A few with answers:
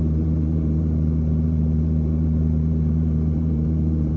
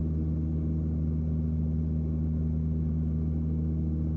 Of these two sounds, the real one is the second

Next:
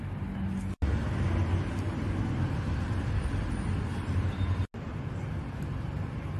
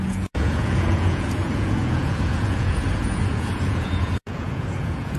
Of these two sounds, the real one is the first